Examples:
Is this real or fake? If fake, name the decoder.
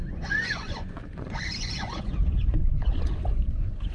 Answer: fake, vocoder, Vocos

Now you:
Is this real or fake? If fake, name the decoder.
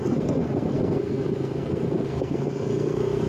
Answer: fake, codec, SNAC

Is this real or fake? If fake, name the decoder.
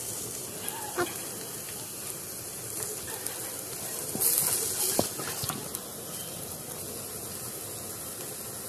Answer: real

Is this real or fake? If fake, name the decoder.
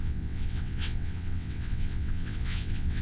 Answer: fake, vocoder, WaveNeXt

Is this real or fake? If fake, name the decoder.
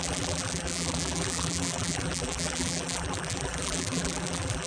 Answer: fake, vocoder, BigVGAN v2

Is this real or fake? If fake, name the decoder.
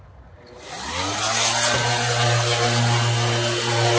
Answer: real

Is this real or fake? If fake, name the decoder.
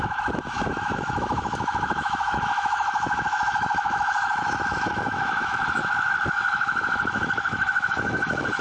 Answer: fake, autoencoder, DAC-VAE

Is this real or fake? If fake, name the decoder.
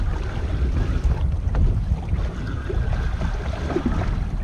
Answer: real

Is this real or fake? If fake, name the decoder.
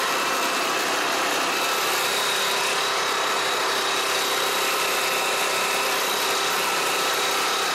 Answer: real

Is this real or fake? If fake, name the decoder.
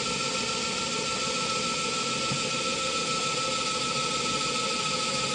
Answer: real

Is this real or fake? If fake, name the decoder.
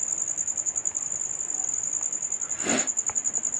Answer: real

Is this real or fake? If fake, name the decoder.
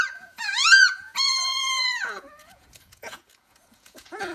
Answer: fake, vocoder, Vocos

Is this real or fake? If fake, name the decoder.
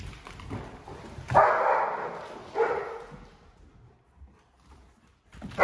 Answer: real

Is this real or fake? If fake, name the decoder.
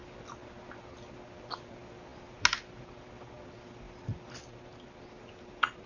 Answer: real